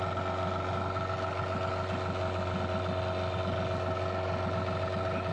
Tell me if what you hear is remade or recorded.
recorded